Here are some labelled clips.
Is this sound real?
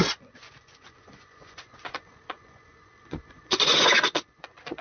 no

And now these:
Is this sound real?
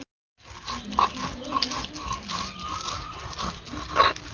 yes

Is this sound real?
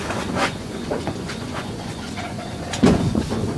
no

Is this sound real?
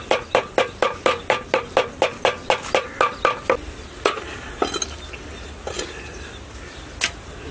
yes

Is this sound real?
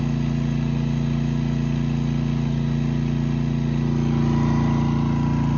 yes